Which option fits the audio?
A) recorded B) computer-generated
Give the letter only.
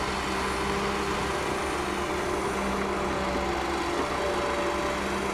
A